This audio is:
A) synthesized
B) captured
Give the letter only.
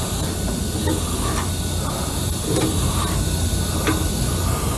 B